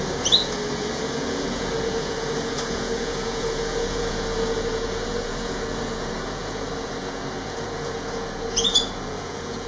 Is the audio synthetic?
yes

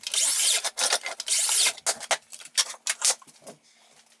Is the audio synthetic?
no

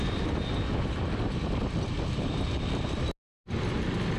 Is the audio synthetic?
no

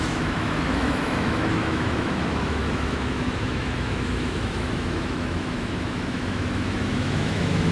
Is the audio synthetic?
yes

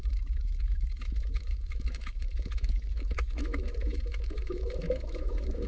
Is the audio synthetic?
yes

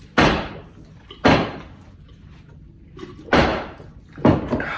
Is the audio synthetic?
no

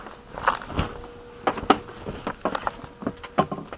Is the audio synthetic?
no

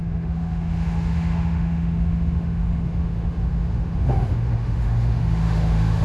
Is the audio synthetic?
yes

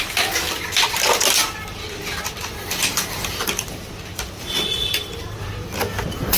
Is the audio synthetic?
yes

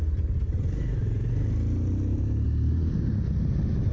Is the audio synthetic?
no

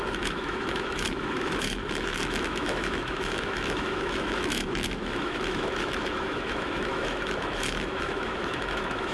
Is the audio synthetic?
yes